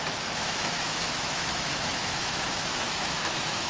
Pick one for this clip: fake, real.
fake